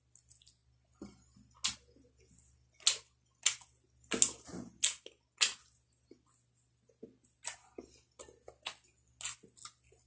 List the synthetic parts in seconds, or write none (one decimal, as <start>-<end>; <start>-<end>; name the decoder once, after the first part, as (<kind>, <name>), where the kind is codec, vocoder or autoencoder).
none